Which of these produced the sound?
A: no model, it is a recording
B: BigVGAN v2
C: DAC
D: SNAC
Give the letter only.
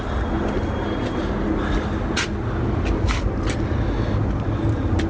A